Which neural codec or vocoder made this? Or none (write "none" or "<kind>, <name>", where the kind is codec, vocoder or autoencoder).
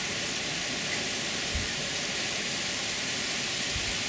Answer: vocoder, BigVGAN v2